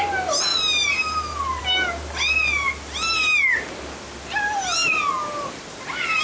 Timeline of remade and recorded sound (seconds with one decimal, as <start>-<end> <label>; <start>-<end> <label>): 0.0-6.2 recorded